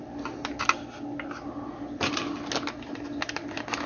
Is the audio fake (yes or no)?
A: no